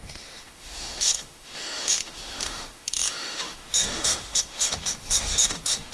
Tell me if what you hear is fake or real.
fake